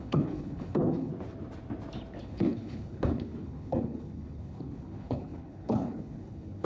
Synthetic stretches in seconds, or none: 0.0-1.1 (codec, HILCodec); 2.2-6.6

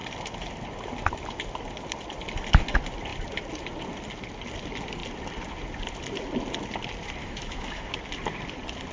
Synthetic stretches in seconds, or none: 7.2-7.9 (autoencoder, DAC-VAE)

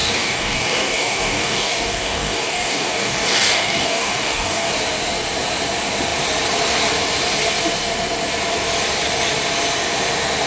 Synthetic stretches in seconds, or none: 0.0-4.7 (codec, DAC)

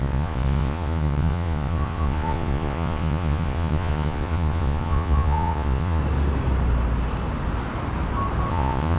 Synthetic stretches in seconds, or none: 0.0-6.0 (vocoder, Vocos); 8.5-9.0

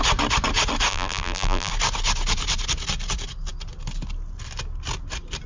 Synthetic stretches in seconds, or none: 0.9-1.7 (vocoder, BigVGAN v2)

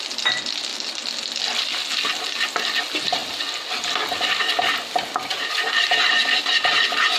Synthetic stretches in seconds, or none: 0.0-0.7 (vocoder, BigVGAN v2); 1.4-3.2; 5.1-7.2

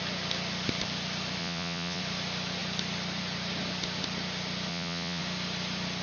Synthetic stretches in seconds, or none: 1.4-2.0 (vocoder, Vocos); 4.7-5.2

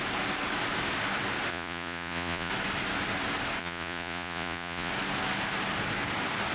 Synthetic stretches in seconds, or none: 1.5-2.5 (vocoder, Vocos); 3.6-4.9